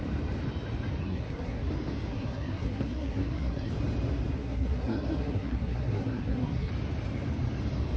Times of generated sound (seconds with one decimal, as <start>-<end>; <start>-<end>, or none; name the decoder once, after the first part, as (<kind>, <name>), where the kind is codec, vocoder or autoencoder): 1.0-1.7 (codec, SNAC); 2.1-3.7; 4.4-6.7